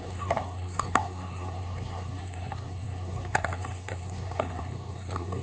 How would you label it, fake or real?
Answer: fake